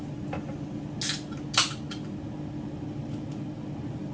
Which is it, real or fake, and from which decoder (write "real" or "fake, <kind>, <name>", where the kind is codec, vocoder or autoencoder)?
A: real